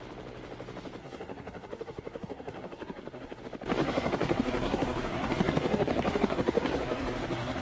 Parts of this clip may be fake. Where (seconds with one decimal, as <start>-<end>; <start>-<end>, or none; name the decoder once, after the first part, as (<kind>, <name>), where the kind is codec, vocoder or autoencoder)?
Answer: 1.0-3.4 (codec, SNAC); 3.8-7.6